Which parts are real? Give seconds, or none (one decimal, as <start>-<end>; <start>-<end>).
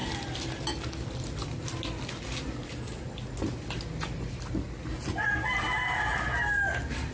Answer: 0.0-7.1